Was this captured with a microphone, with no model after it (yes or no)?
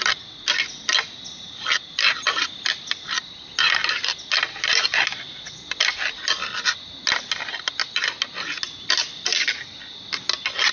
yes